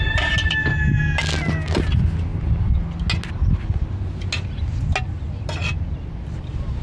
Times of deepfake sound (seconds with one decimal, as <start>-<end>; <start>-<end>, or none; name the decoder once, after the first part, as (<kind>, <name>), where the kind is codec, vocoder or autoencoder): none